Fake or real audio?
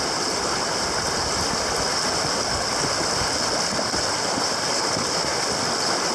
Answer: real